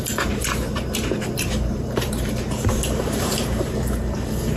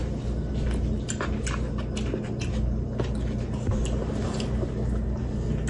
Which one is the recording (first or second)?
second